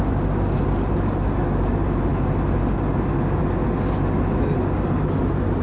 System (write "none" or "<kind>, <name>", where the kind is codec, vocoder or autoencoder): none